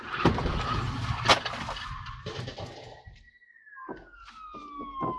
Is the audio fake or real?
real